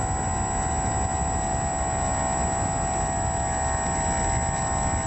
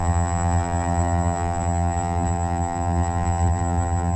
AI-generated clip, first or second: second